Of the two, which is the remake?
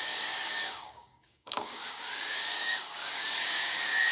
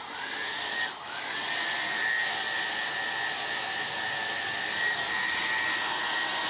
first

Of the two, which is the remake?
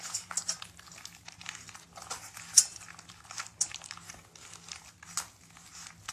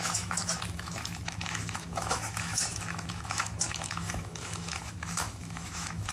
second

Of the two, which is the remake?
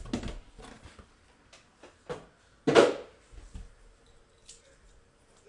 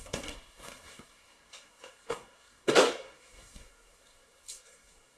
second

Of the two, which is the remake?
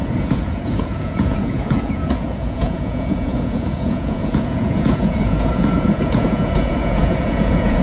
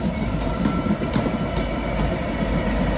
first